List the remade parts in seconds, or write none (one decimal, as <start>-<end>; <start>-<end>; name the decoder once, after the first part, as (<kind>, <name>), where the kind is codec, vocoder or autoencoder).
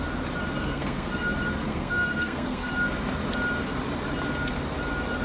0.6-1.1 (codec, SNAC); 1.7-2.7